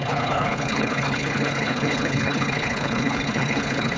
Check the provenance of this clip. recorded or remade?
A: remade